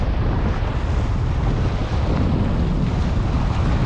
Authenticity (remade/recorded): recorded